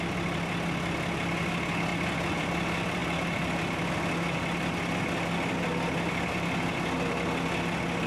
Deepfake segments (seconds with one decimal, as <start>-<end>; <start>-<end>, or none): none